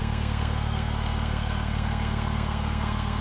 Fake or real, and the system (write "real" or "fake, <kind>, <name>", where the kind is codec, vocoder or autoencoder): fake, codec, SNAC